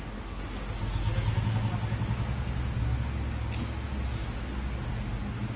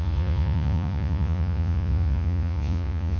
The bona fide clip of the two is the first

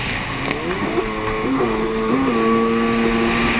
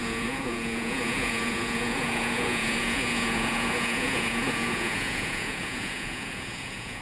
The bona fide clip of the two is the first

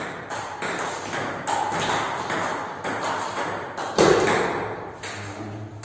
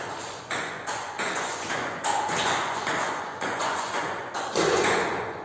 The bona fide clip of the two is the first